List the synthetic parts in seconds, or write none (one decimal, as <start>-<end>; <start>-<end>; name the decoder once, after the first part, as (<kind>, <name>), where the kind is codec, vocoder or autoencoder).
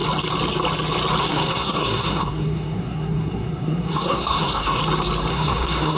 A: 1.2-4.8 (codec, SNAC); 5.3-6.0